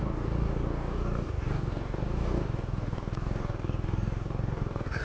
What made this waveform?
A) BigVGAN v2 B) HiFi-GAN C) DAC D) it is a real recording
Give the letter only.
C